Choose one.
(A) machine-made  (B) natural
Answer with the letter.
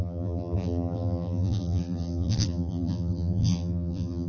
A